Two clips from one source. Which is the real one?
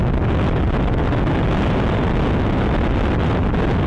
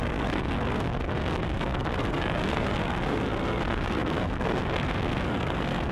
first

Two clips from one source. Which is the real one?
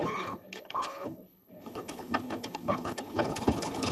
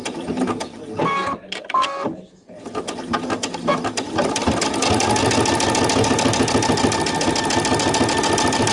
second